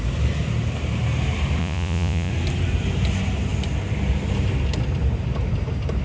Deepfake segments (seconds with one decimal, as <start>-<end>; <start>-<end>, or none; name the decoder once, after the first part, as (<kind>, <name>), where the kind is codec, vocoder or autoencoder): 1.6-2.3 (vocoder, Vocos)